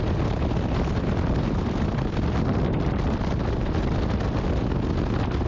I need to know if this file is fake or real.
real